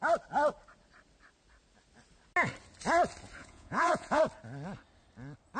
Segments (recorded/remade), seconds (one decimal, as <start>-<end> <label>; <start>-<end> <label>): 0.0-3.4 recorded; 3.4-4.2 remade; 4.2-5.6 recorded